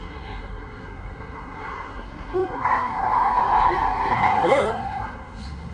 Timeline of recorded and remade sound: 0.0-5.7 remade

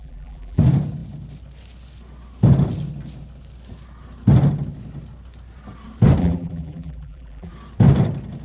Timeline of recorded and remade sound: 0.0-0.6 remade; 0.6-6.2 recorded; 6.2-7.5 remade; 7.5-8.4 recorded

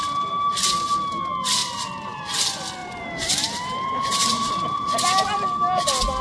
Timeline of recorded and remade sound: 0.0-1.6 recorded; 1.6-2.2 remade; 2.2-2.8 recorded; 2.8-4.8 remade; 4.8-6.2 recorded

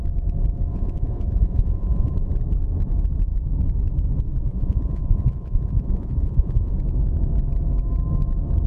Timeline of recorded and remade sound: 0.0-0.7 recorded; 0.7-2.1 remade; 2.1-4.5 recorded; 4.5-6.7 remade; 6.7-8.7 recorded

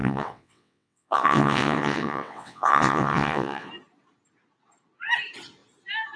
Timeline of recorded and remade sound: 0.0-3.7 remade; 3.7-6.2 recorded